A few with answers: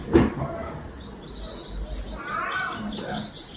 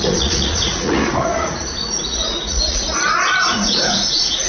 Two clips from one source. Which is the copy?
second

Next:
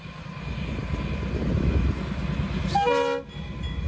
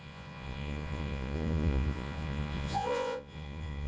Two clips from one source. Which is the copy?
second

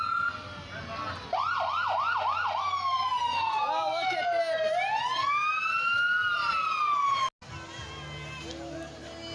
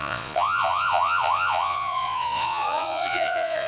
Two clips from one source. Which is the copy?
second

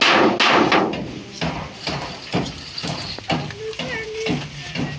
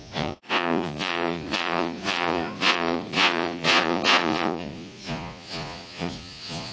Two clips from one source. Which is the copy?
second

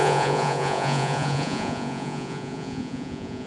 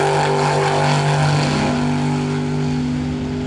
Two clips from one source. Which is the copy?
first